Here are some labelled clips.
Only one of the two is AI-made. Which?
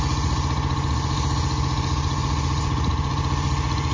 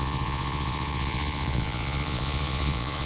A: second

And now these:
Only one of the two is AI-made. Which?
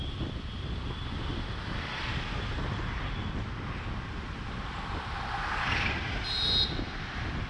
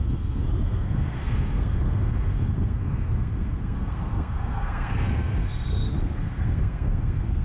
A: second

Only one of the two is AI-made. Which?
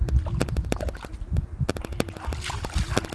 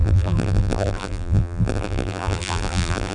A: second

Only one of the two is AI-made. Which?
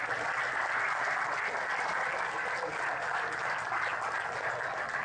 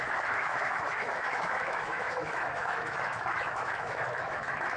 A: second